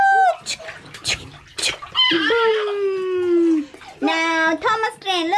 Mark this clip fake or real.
real